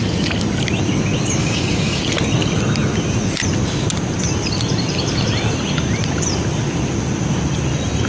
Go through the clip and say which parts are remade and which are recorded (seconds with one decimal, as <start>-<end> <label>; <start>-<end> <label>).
0.0-1.4 recorded; 1.4-2.0 remade; 2.0-8.1 recorded